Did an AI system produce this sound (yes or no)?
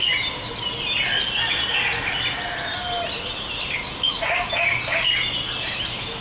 no